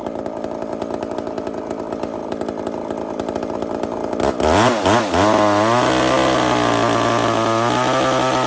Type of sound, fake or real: real